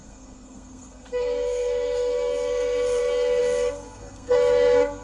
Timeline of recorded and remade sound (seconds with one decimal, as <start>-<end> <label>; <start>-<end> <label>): 0.0-5.0 remade